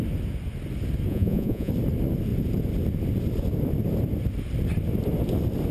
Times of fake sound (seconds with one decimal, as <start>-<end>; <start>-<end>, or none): 1.1-1.7